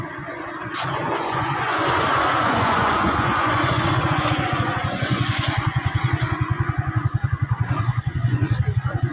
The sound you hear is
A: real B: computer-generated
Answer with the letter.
B